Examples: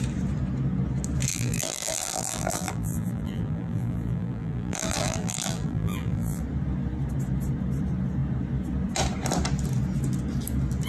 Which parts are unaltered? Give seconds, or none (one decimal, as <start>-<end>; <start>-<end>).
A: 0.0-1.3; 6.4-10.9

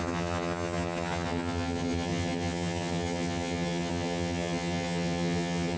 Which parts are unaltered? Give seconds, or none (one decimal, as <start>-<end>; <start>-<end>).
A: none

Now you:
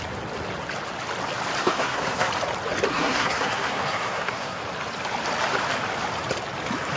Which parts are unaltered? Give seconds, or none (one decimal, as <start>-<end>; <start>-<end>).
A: 0.0-1.6; 2.3-2.9; 4.6-7.0